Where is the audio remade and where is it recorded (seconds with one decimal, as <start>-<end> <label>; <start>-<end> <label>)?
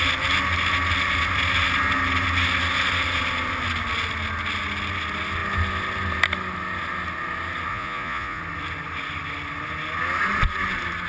0.0-7.7 recorded; 7.7-8.4 remade; 8.4-11.1 recorded